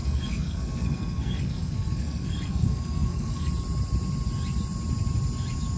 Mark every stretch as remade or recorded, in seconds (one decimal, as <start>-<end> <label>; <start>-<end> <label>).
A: 0.0-3.5 remade; 3.5-5.8 recorded